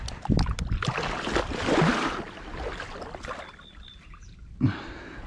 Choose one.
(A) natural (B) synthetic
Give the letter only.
A